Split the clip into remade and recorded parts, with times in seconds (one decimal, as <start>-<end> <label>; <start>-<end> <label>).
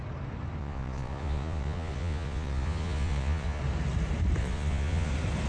0.0-0.6 recorded; 0.6-3.6 remade; 3.6-4.4 recorded; 4.4-5.1 remade; 5.1-5.5 recorded